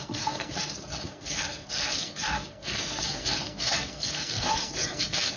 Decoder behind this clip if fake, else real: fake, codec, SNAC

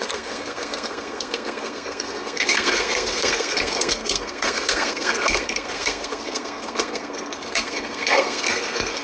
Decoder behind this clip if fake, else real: fake, codec, SNAC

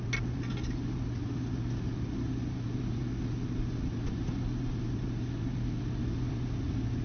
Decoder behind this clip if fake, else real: real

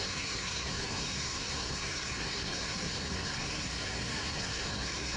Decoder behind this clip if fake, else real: fake, codec, SNAC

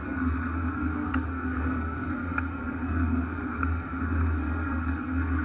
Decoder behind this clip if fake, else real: fake, codec, SNAC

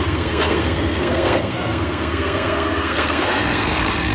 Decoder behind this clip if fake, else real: fake, codec, SNAC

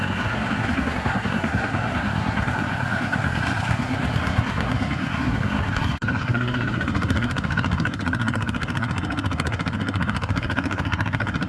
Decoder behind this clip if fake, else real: fake, codec, SNAC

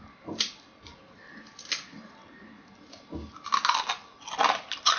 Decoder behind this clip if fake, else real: real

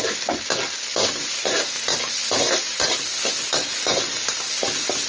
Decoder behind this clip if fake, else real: real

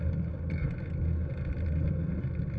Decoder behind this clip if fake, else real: real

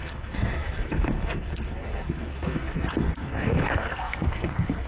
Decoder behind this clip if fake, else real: fake, codec, SNAC